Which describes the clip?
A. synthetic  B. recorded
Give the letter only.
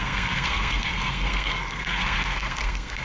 A